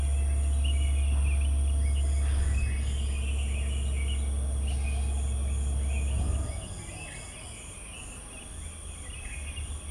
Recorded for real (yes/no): yes